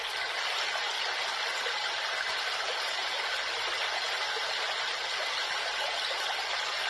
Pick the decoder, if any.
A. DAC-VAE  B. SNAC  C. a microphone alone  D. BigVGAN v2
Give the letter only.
C